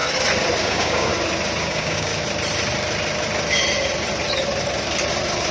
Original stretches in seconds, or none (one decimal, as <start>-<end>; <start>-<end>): 0.0-0.6; 1.1-1.6; 2.1-5.5